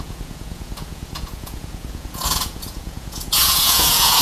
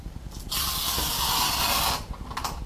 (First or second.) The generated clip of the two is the first